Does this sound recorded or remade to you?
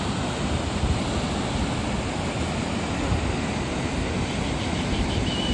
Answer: recorded